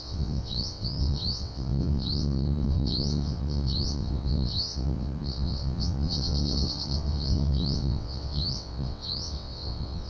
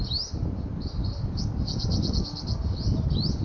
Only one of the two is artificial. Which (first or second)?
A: first